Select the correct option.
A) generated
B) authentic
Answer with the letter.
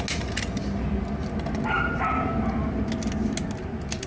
B